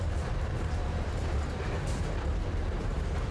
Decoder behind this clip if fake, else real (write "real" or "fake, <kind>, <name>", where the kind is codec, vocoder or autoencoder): fake, vocoder, BigVGAN v2